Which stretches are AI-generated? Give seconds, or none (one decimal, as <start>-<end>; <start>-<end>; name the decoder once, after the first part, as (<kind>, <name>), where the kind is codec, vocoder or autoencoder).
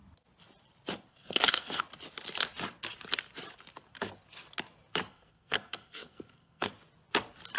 1.1-1.8 (codec, SNAC); 5.1-6.7